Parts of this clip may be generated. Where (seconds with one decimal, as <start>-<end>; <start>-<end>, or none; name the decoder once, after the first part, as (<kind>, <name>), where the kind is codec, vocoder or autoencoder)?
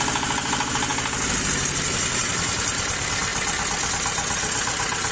none